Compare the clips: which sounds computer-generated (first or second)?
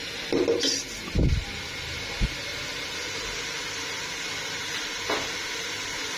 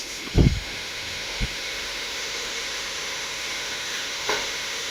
second